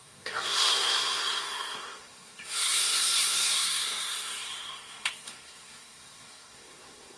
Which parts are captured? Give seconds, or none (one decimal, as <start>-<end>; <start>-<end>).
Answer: none